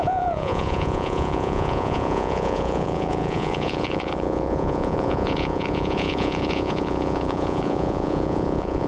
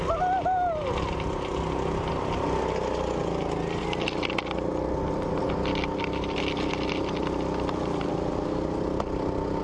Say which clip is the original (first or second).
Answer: second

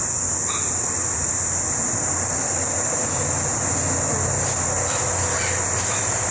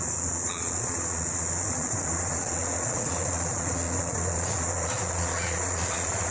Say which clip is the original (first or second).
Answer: first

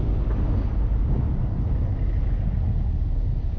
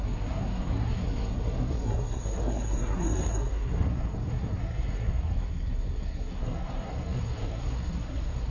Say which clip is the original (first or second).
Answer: first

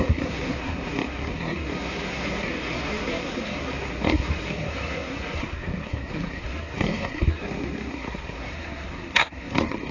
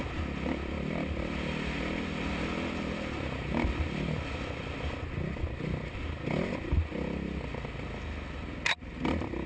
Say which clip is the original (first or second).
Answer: second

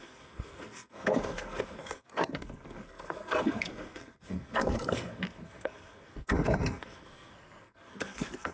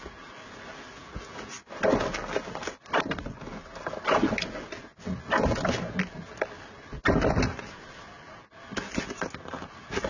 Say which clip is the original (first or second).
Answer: second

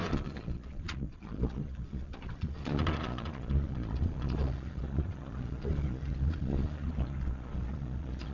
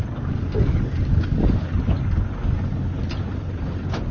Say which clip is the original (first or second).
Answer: second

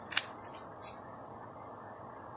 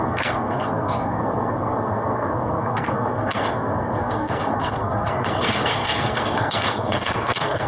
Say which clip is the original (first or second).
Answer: first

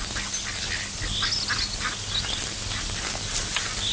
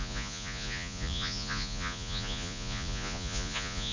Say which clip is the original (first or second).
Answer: first